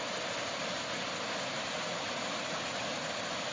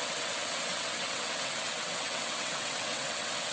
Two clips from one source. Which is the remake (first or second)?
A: second